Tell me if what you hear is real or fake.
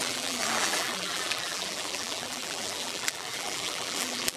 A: fake